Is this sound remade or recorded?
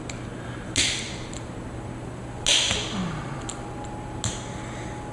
recorded